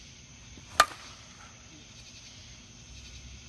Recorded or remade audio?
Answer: recorded